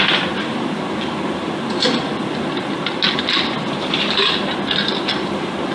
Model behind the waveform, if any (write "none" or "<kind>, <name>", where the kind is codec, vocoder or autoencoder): none